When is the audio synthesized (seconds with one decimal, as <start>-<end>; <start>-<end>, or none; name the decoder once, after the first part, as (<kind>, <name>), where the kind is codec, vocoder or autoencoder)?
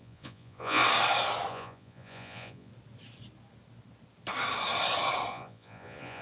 0.0-0.8 (vocoder, Vocos); 1.5-2.7; 5.3-6.2